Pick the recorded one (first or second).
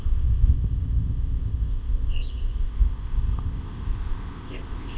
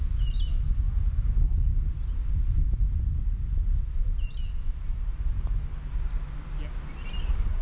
second